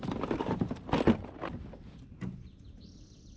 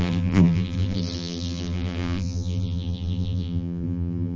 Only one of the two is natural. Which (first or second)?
first